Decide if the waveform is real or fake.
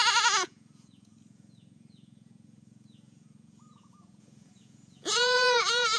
fake